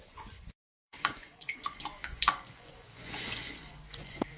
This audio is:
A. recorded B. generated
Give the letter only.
B